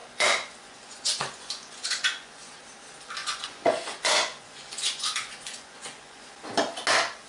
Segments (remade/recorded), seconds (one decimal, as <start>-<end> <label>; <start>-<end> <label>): 0.0-2.5 remade; 2.5-3.2 recorded; 3.2-6.3 remade; 6.3-7.3 recorded